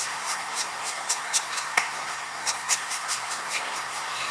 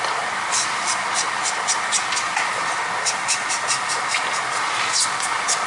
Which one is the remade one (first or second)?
first